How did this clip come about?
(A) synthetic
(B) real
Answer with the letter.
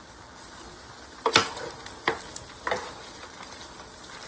B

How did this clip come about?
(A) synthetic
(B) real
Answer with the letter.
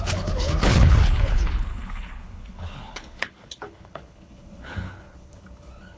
A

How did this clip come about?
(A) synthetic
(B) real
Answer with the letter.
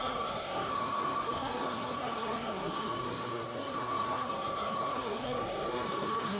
A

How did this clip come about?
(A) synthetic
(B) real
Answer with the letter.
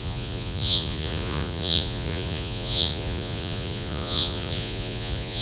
A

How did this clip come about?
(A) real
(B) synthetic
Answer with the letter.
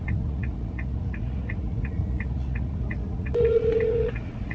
B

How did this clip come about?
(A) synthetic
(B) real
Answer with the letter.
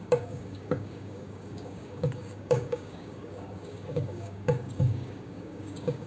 A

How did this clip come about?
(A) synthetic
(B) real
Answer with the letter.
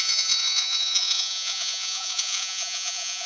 A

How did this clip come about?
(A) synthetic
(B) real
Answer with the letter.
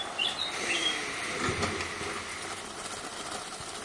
B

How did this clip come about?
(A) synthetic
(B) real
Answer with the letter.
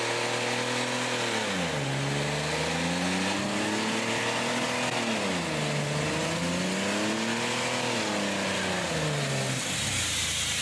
B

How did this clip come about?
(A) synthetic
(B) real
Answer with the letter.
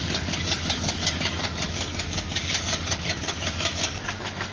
A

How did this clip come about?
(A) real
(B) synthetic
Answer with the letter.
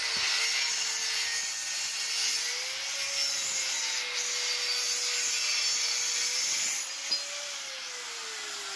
A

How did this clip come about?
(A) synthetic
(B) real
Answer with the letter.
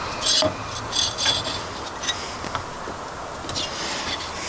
B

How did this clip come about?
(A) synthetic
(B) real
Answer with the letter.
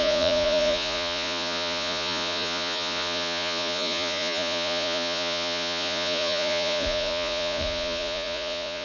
A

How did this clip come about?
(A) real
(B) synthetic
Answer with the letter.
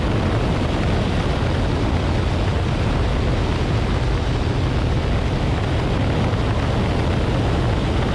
A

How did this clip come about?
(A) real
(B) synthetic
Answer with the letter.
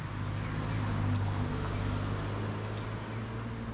A